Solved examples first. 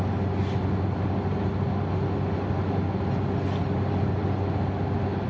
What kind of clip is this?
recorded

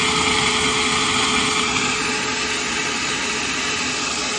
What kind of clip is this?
recorded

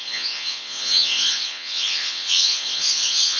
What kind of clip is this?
remade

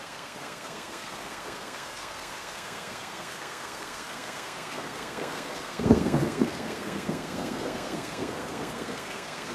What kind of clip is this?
remade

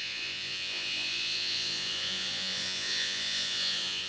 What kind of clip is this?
remade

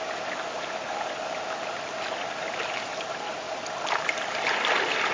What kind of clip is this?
recorded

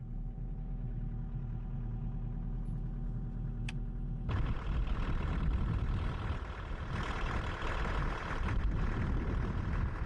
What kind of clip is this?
recorded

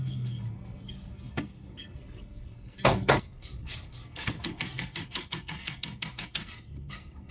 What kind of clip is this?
remade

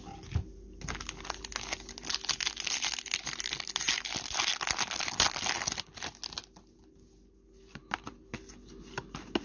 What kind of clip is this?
recorded